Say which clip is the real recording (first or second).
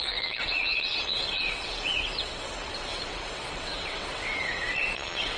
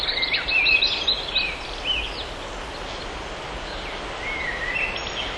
second